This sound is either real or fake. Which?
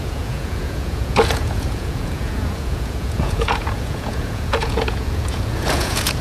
fake